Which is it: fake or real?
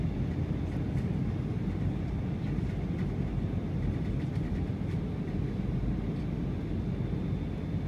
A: real